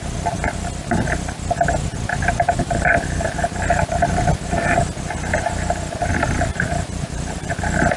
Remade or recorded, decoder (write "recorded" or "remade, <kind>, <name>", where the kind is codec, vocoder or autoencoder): recorded